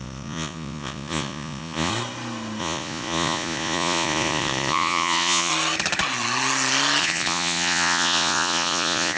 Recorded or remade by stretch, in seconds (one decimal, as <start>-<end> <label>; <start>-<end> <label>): 0.0-1.9 remade; 1.9-2.6 recorded; 2.6-5.5 remade; 5.5-7.0 recorded; 7.0-9.2 remade